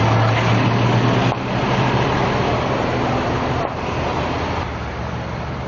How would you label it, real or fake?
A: real